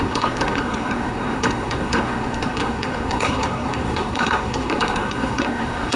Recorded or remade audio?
remade